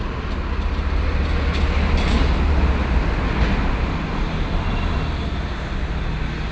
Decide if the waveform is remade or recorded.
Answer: recorded